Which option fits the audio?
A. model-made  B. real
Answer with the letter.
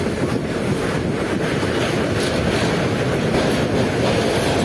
B